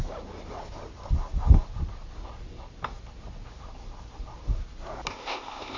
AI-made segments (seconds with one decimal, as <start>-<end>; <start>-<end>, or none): 5.1-5.8